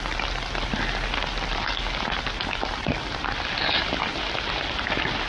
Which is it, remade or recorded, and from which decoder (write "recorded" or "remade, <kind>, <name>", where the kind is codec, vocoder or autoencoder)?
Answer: recorded